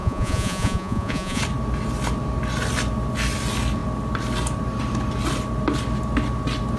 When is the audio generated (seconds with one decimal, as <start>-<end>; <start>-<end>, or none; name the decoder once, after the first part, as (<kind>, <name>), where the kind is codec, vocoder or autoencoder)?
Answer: 0.0-1.4 (vocoder, Vocos)